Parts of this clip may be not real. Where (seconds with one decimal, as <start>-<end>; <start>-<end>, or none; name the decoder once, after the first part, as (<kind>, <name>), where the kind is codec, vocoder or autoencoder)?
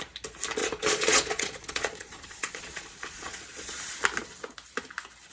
0.6-3.8 (vocoder, Vocos)